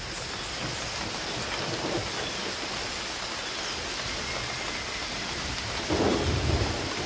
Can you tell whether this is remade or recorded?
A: recorded